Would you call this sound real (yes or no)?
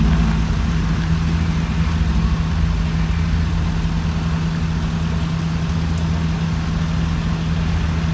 yes